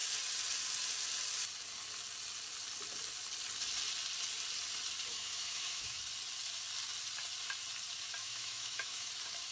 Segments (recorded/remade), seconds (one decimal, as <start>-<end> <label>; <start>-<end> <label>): 0.0-5.1 recorded; 5.1-6.0 remade; 6.0-8.2 recorded; 8.2-9.1 remade; 9.1-9.5 recorded